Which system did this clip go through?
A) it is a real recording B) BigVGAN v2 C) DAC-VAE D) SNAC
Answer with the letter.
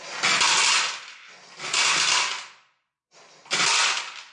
A